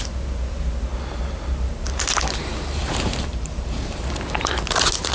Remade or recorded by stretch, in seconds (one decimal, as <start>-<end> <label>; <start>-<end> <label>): 0.0-0.9 recorded; 0.9-4.0 remade; 4.0-5.1 recorded